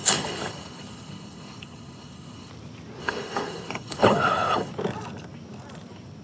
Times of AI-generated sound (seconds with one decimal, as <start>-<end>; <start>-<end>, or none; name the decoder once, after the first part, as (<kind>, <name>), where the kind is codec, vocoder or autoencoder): 0.0-2.5 (codec, HILCodec); 3.0-4.7